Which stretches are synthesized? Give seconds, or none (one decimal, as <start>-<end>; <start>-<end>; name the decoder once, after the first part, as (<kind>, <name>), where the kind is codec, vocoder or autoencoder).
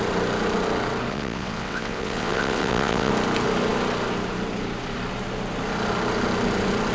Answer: 1.1-3.1 (vocoder, WaveNeXt)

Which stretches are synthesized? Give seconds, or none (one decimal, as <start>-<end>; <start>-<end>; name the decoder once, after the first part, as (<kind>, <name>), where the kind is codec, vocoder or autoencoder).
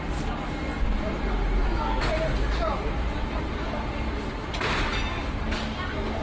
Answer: none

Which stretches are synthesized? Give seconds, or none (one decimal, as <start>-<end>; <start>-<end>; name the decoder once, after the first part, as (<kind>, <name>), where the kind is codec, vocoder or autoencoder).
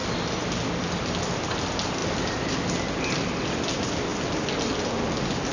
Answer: none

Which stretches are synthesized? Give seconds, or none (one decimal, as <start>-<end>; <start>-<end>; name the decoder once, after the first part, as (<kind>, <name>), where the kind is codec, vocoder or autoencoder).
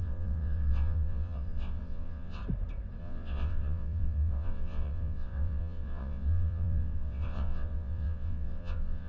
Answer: 0.0-2.4 (vocoder, WaveNeXt); 3.0-9.1